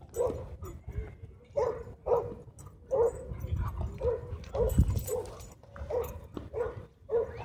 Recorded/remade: recorded